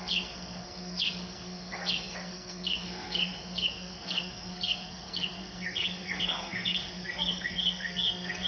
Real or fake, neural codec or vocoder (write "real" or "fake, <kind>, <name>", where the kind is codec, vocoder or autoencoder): fake, codec, SNAC